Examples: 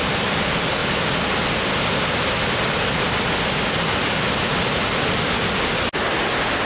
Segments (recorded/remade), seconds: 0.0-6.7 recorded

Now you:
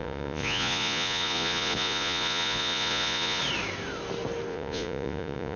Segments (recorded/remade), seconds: 0.0-3.4 remade; 3.4-4.5 recorded; 4.5-5.6 remade

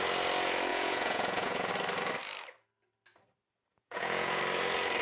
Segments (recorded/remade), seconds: 0.0-0.7 recorded; 0.7-1.7 remade; 1.7-3.7 recorded; 3.7-4.4 remade; 4.4-5.0 recorded

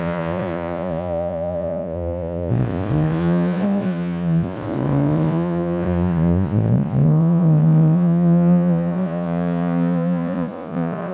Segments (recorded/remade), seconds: 0.0-11.1 remade